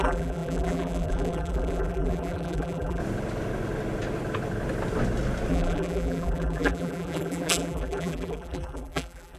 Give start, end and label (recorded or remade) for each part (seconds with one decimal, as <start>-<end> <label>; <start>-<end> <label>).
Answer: 0.0-3.0 remade; 3.0-5.5 recorded; 5.5-9.4 remade